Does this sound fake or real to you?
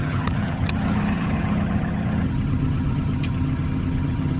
fake